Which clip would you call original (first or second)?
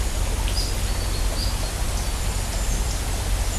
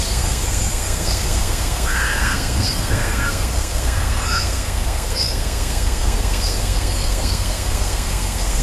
first